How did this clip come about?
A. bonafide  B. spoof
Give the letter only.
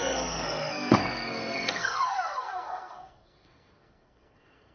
B